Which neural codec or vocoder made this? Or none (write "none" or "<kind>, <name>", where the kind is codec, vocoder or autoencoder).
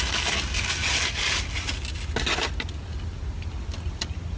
none